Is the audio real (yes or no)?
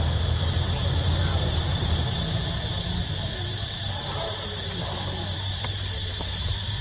no